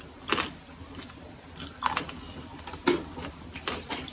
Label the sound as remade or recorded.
recorded